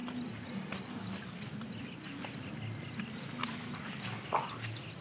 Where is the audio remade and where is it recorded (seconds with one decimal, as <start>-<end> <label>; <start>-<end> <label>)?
0.0-5.0 recorded